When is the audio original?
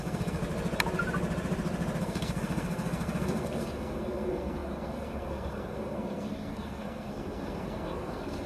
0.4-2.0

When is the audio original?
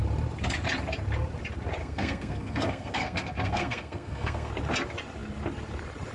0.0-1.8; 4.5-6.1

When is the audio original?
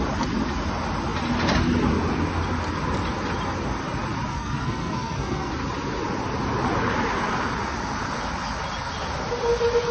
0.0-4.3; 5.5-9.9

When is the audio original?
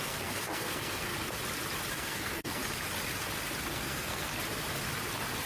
1.1-1.9; 2.6-3.7; 4.3-5.5